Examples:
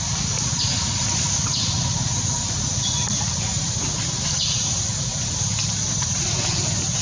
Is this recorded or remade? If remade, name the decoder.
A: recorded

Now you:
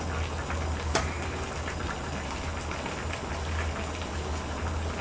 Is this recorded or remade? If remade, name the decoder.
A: recorded